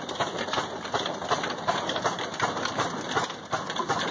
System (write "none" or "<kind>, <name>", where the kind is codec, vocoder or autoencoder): vocoder, BigVGAN v2